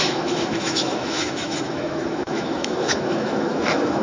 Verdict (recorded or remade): remade